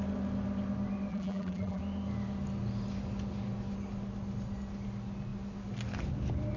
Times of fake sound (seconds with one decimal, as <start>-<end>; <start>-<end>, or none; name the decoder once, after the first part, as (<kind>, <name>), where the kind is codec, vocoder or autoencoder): 1.1-1.8 (vocoder, BigVGAN v2)